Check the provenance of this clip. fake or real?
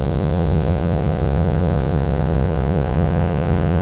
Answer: fake